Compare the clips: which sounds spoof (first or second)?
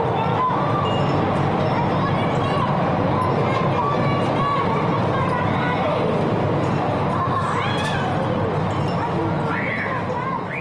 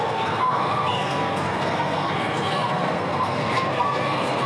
second